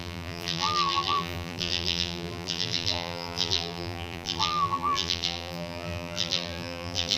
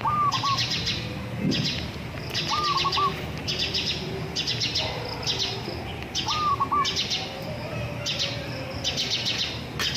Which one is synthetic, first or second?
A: first